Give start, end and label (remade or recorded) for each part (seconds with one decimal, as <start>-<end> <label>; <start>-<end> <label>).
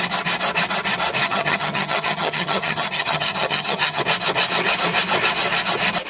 0.0-1.2 recorded; 1.2-4.0 remade; 4.0-6.1 recorded